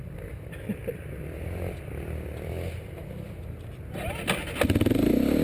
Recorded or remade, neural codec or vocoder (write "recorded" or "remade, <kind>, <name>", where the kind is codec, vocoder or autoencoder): recorded